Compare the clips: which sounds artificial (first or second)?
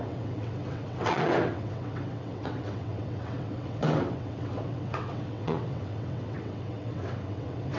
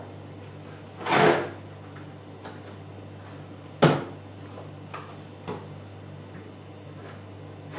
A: first